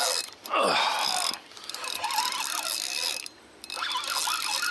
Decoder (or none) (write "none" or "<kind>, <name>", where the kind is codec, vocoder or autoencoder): none